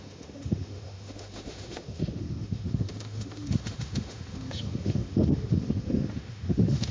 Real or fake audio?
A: fake